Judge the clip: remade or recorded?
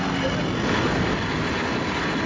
recorded